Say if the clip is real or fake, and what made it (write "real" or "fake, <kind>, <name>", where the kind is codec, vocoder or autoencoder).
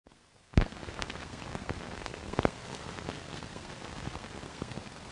fake, codec, SNAC